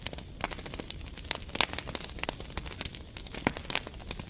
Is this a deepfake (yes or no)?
no